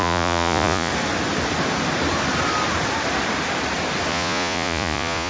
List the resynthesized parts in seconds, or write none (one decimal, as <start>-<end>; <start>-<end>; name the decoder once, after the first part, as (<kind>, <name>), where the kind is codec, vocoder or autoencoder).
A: 0.0-0.9 (vocoder, Vocos); 4.1-5.3